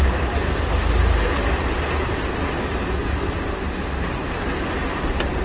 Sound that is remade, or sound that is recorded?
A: recorded